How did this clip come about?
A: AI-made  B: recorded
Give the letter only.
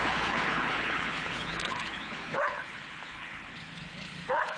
A